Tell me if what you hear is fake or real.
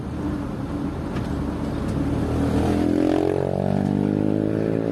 real